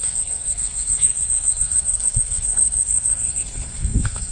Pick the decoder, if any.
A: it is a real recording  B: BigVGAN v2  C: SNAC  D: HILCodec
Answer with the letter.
C